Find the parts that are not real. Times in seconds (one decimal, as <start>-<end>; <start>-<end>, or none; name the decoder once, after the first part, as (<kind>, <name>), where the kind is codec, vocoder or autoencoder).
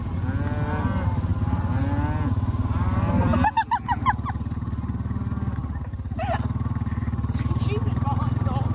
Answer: none